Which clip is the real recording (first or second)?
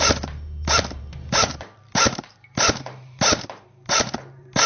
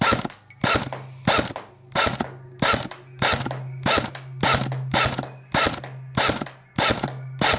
second